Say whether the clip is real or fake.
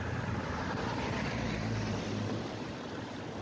fake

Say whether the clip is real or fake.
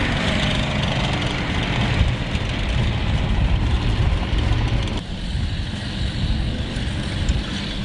real